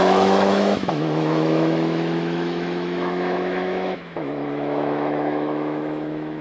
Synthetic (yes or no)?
yes